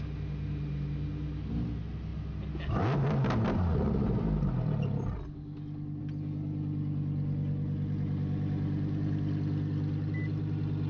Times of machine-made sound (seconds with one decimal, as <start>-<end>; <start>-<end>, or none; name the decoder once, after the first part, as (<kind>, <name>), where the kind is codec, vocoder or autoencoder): none